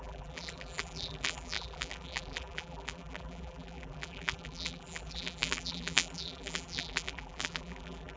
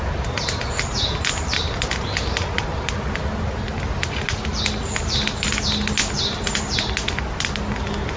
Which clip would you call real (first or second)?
second